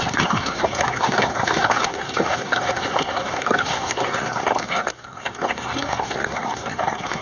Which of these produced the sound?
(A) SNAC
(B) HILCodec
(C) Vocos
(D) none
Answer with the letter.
A